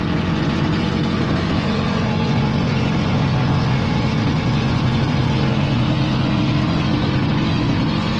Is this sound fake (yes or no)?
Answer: yes